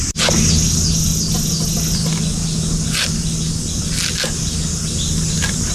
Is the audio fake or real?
real